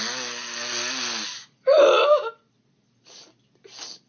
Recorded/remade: recorded